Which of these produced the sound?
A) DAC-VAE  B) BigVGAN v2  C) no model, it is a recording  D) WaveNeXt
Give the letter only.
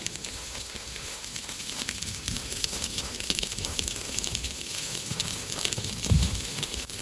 A